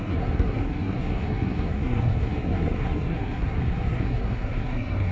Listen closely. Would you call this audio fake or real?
fake